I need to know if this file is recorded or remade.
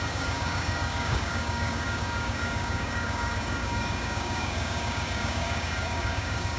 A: remade